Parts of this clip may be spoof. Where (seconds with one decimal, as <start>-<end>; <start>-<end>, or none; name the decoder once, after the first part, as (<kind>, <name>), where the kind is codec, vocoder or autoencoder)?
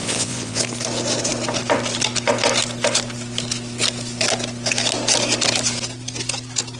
0.0-0.6 (vocoder, Vocos)